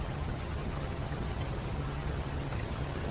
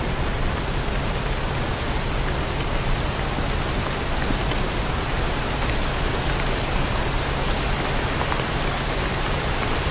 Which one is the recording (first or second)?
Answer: second